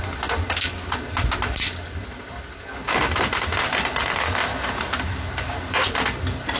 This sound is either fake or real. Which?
real